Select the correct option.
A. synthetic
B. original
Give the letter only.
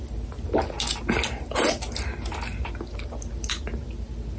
B